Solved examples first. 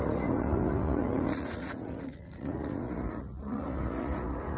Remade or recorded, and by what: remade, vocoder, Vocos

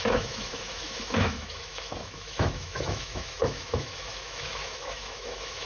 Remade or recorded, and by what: remade, autoencoder, DAC-VAE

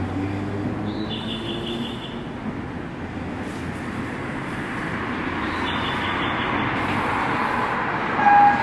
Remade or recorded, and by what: recorded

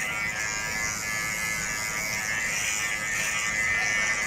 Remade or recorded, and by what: recorded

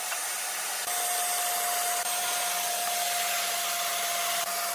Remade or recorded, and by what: recorded